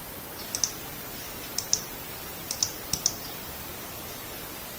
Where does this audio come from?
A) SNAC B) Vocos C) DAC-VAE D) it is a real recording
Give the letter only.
D